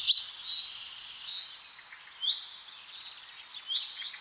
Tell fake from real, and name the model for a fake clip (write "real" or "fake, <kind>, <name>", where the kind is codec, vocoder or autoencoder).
real